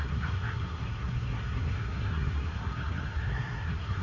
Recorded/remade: remade